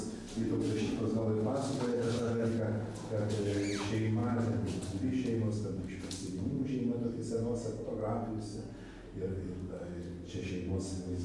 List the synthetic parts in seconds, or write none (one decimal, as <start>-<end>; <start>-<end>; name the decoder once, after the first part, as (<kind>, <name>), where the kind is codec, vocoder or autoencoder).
1.9-2.5 (codec, HILCodec)